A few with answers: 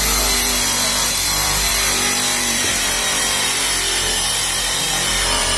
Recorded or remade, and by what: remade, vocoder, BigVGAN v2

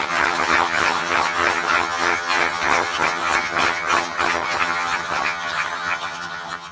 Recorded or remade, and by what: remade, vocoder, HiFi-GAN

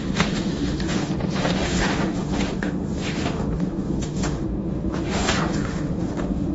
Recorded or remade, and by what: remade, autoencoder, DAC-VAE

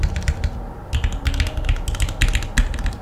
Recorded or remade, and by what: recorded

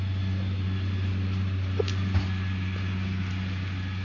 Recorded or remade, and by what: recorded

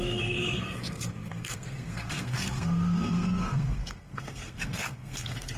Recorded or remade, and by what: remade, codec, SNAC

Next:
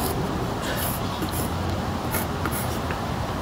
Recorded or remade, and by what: recorded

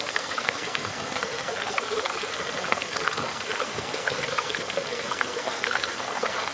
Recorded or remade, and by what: remade, codec, SNAC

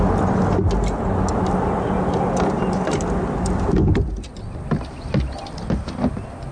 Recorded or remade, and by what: recorded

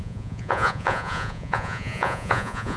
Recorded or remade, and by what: remade, vocoder, Vocos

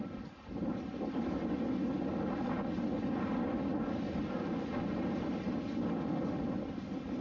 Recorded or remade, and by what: recorded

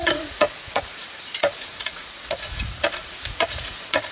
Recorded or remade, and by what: remade, vocoder, Vocos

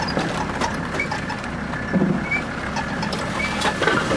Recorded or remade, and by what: recorded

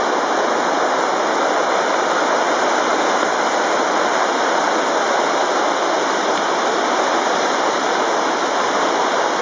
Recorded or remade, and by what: recorded